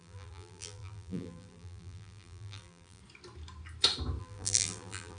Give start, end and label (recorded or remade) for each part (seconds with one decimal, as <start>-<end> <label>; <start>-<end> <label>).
0.0-3.0 remade; 3.0-4.2 recorded; 4.2-5.2 remade